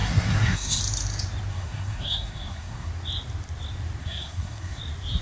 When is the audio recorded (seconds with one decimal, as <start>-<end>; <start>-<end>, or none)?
0.8-1.5; 2.9-4.0; 4.8-5.2